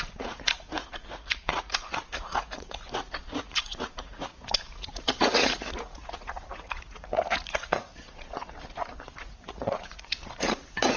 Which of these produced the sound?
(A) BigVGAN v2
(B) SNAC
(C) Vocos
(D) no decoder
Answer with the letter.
C